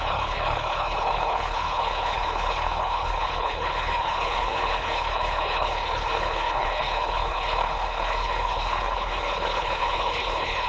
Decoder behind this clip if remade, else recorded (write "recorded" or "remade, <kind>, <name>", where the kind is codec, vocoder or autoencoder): remade, codec, HILCodec